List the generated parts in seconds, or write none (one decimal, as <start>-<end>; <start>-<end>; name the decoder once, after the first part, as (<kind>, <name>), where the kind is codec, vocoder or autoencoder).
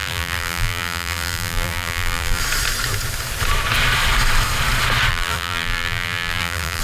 0.0-2.4 (vocoder, BigVGAN v2); 5.1-6.8